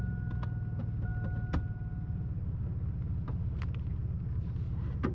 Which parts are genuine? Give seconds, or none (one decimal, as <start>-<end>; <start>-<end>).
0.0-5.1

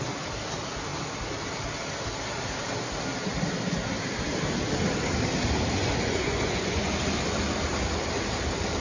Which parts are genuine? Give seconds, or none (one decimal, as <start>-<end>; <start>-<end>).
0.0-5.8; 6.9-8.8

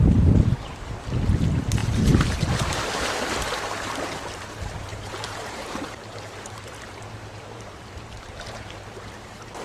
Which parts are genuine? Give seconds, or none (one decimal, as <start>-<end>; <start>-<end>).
0.0-1.8; 2.4-4.9; 8.9-9.6